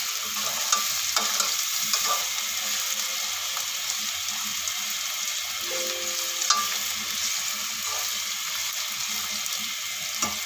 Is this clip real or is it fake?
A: real